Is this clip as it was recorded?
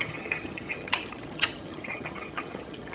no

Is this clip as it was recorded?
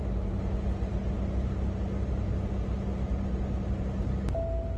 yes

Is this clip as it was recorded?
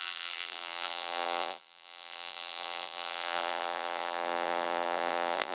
no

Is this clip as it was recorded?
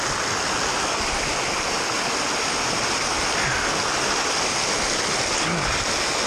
yes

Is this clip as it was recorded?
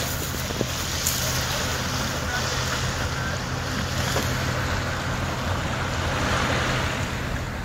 yes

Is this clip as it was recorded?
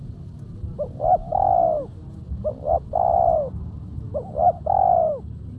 yes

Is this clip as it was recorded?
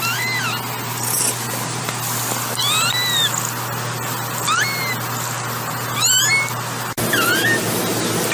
yes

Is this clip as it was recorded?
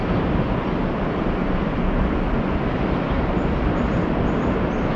yes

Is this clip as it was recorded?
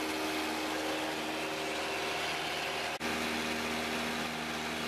yes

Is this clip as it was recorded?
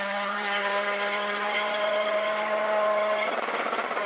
no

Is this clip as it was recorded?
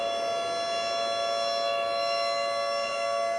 yes